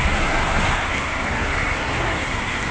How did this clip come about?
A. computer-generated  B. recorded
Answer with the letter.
A